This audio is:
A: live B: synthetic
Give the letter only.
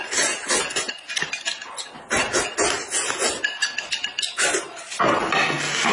A